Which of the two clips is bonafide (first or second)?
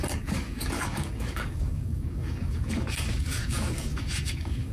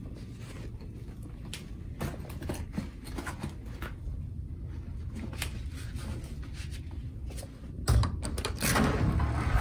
second